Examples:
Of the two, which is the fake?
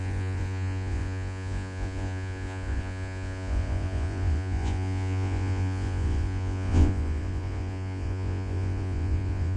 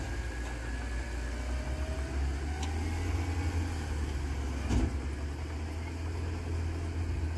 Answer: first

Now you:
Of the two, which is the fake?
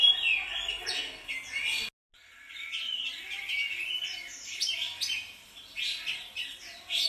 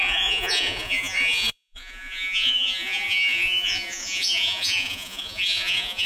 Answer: second